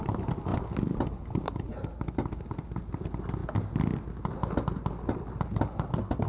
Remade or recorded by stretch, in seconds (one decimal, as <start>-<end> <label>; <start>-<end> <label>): 0.0-6.3 recorded